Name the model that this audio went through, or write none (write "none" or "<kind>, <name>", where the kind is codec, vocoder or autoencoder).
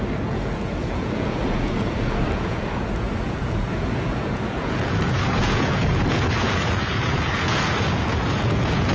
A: vocoder, Vocos